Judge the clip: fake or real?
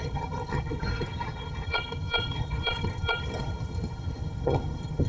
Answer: fake